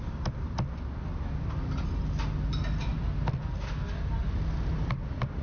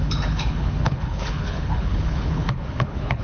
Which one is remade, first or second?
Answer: second